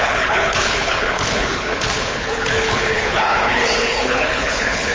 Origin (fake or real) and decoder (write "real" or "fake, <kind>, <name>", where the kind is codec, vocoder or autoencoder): fake, codec, HILCodec